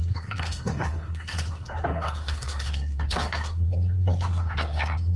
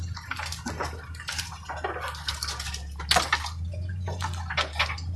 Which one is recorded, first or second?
second